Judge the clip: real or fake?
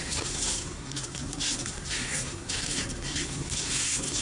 fake